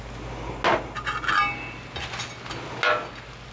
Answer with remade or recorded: recorded